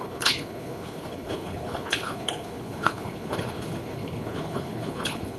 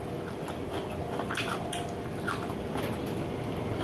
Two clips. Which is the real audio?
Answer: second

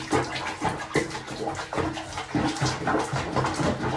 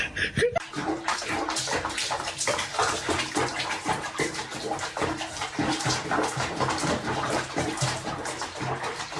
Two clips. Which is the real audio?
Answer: first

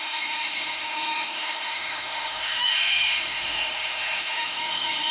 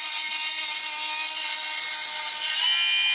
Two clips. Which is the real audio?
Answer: second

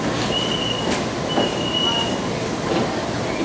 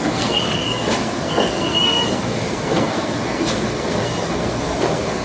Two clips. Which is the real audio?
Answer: first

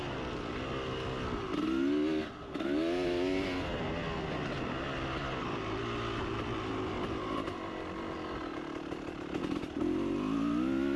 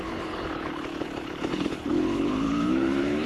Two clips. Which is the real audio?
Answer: first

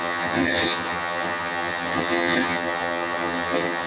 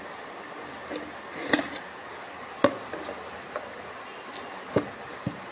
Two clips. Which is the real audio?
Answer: second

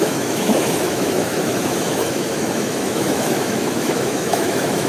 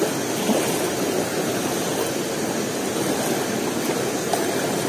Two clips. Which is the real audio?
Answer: second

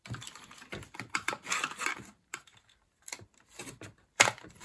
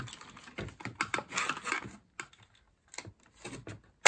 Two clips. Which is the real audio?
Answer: second